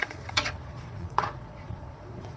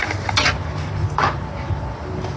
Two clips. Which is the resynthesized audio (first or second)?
first